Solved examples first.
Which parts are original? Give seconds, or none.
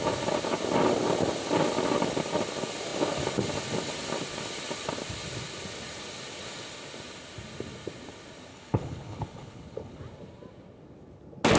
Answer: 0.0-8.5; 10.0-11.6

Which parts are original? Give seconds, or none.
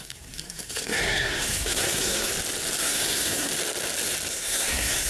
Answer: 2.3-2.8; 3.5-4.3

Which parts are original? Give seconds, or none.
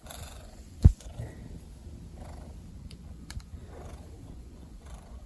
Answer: 1.1-2.7; 3.6-4.3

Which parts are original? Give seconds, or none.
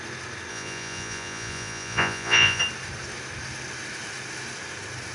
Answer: 0.0-0.5; 2.6-5.1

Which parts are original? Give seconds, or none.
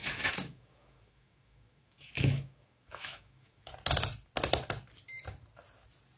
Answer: 3.7-6.2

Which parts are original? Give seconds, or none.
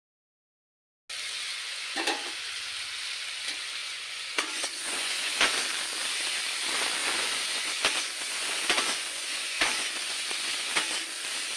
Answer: 0.0-1.5; 2.3-3.8; 5.3-7.0; 10.7-11.6